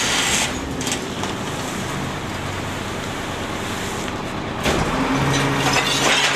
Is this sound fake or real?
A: real